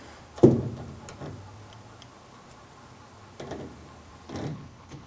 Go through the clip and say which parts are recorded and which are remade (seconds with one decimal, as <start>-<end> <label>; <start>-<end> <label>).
0.0-4.5 recorded; 4.5-5.1 remade